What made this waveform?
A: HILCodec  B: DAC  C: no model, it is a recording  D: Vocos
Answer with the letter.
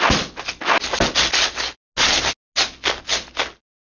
C